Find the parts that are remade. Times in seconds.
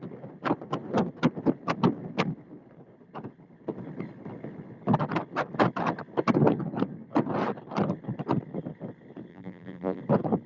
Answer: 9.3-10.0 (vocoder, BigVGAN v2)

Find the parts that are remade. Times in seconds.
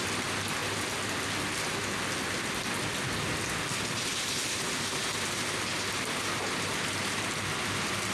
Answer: none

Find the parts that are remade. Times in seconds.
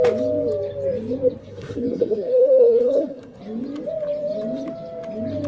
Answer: 1.4-3.4 (codec, SNAC)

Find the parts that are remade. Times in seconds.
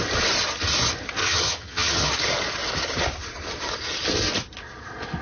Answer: 1.2-2.1 (vocoder, HiFi-GAN)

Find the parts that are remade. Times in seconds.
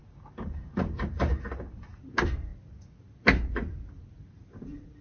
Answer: 0.0-2.0 (vocoder, BigVGAN v2)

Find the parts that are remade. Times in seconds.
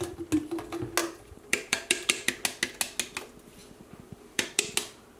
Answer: 1.0-2.3 (vocoder, BigVGAN v2); 3.6-4.6